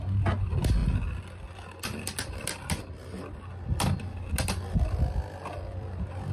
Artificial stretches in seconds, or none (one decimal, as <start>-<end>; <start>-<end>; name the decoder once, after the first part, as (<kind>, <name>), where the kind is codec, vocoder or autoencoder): none